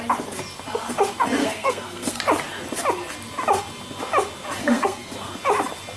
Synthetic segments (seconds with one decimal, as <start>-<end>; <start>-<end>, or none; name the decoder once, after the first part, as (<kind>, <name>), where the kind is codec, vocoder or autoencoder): 1.4-2.2 (codec, SNAC); 4.6-5.3